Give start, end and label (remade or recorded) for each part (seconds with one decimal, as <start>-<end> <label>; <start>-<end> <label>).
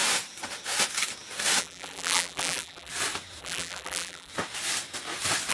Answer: 0.0-1.6 recorded; 1.6-2.9 remade; 2.9-3.4 recorded; 3.4-4.3 remade; 4.3-5.5 recorded